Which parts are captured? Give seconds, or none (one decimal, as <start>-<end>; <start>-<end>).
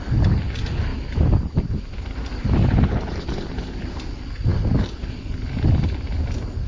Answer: 0.0-0.9; 1.7-6.7